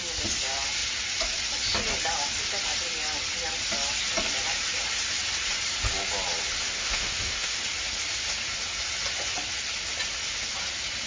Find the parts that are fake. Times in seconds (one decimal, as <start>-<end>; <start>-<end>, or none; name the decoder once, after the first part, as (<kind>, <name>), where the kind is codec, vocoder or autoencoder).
6.7-7.6 (autoencoder, DAC-VAE)